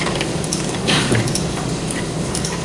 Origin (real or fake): fake